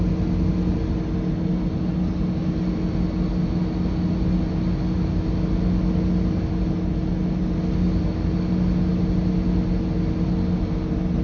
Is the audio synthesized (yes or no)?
no